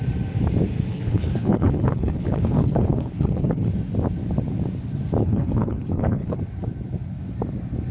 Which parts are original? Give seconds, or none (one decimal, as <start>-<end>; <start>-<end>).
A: 0.0-0.9; 3.7-5.2; 6.4-7.9